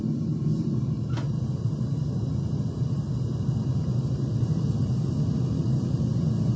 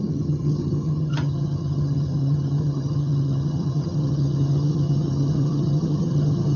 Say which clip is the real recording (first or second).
first